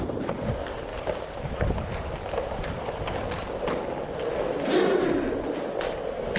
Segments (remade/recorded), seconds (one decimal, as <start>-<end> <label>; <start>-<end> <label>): 0.0-0.9 recorded; 0.9-3.0 remade; 3.0-6.4 recorded